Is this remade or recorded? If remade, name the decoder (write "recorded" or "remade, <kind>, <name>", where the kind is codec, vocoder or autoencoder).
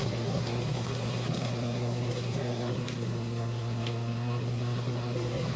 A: remade, codec, SNAC